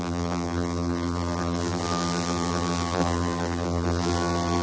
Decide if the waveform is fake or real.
fake